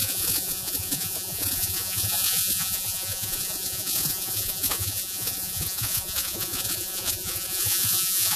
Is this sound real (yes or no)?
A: no